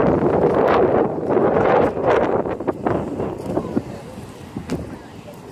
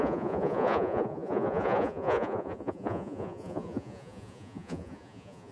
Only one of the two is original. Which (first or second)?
first